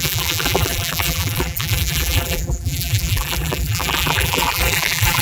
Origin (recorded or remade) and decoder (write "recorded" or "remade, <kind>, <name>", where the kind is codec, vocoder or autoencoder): remade, vocoder, BigVGAN v2